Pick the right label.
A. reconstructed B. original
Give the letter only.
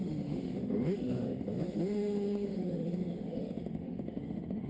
A